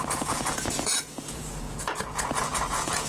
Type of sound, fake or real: fake